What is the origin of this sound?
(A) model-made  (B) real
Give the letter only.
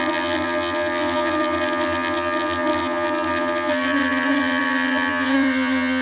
A